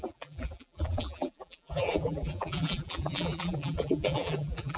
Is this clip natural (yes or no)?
no